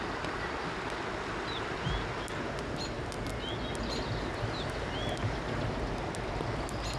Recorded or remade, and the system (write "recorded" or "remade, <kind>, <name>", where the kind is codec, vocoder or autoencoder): recorded